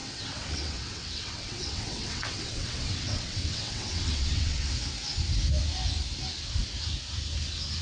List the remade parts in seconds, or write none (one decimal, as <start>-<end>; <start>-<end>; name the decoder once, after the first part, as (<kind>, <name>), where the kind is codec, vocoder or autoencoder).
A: 0.0-4.7 (vocoder, WaveNeXt)